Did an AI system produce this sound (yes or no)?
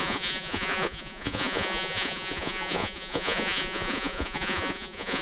yes